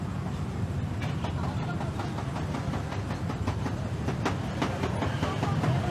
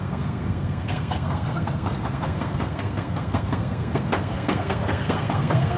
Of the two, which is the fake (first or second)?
second